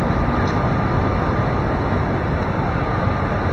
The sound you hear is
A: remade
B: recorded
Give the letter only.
B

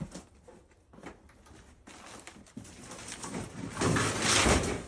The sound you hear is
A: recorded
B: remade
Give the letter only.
A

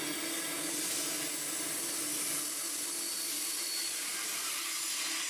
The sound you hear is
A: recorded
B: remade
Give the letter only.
A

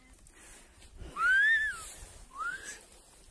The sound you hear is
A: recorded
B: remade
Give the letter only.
A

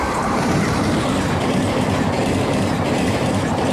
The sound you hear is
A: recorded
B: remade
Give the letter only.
B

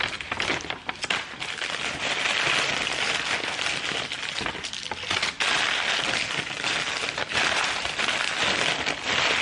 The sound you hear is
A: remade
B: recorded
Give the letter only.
B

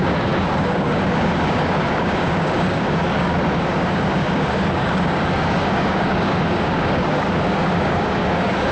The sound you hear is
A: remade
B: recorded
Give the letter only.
A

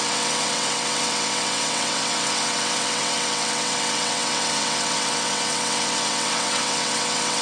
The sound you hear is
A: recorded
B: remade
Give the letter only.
B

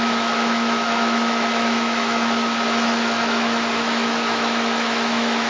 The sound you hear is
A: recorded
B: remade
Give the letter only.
B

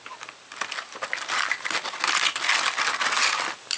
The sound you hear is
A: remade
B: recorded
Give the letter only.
B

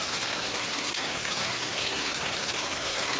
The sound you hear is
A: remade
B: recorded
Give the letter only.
A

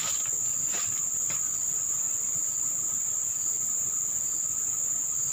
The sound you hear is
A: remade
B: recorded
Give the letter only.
B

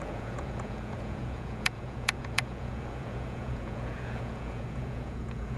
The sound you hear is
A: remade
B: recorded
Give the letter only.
A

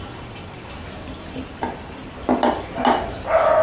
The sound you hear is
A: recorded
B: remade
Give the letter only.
A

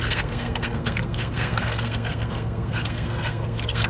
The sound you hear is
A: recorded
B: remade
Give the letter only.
B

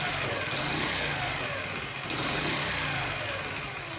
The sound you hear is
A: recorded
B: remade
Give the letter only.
A